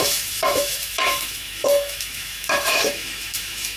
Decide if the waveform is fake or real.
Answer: fake